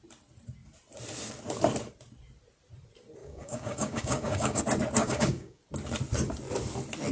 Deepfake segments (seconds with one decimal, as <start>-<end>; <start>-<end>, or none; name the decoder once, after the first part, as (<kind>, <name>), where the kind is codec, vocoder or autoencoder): 3.2-4.6 (codec, DAC); 5.0-5.6